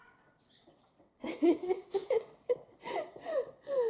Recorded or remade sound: remade